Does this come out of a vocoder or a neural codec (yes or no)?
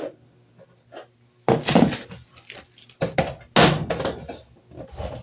no